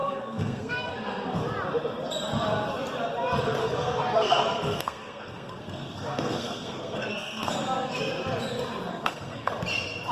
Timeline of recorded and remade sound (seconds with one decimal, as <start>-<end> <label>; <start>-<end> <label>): 0.0-1.4 remade; 1.4-3.6 recorded; 3.6-8.0 remade; 8.0-8.9 recorded; 8.9-9.5 remade; 9.5-10.1 recorded